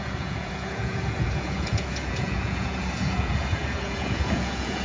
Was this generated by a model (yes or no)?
yes